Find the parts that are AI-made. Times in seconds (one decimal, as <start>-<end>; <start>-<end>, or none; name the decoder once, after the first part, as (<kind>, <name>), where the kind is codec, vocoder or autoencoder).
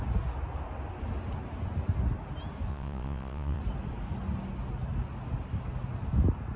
2.7-3.6 (vocoder, WaveNeXt)